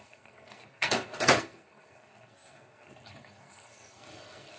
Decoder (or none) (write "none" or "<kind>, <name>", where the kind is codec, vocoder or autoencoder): codec, SNAC